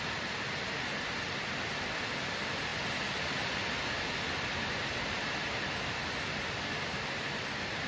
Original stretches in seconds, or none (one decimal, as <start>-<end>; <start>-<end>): 0.0-7.9